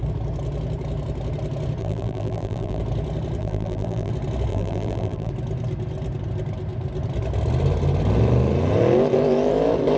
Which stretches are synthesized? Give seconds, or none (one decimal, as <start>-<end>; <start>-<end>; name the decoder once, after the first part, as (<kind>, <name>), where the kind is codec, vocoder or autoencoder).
1.8-2.8 (vocoder, BigVGAN v2); 3.4-4.1; 4.5-5.3